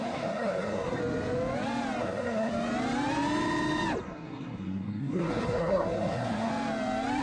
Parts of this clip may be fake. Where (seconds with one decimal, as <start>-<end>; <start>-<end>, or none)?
0.0-1.0; 2.0-2.5; 4.0-6.5